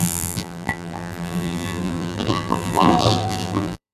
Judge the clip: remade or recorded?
remade